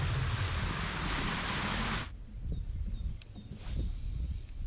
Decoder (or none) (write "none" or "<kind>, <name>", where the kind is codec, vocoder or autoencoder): none